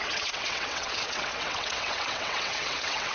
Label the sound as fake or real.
fake